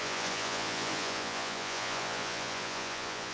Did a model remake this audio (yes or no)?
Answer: yes